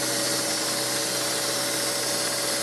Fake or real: real